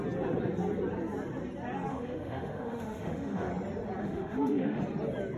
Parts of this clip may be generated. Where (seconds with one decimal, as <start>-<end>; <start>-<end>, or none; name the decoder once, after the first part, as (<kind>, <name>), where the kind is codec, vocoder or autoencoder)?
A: 1.9-3.5 (autoencoder, DAC-VAE); 4.0-4.8